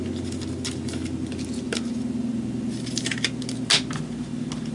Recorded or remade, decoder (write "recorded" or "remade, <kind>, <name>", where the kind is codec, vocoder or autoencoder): recorded